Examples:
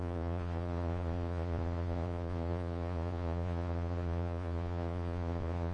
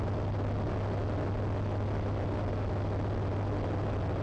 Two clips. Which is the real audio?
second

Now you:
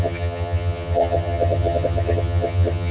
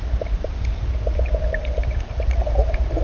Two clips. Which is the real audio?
second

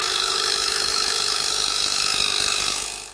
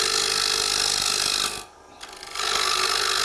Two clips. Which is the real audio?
second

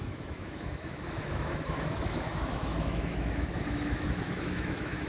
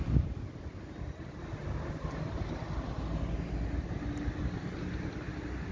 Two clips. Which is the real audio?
second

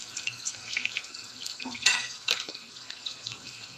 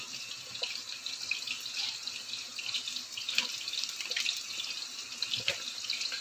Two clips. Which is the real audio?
second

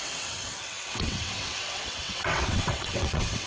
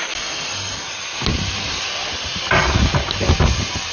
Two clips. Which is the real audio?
second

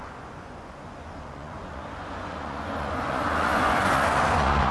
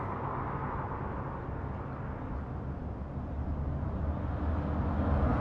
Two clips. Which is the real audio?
second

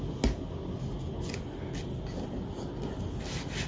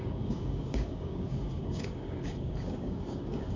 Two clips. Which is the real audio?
first